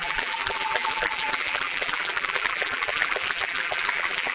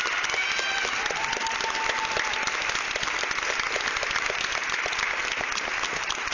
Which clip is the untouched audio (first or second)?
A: second